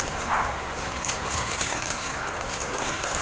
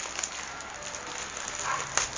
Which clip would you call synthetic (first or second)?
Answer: first